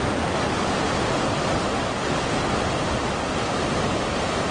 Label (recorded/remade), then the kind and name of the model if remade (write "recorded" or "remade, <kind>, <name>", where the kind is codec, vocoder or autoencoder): recorded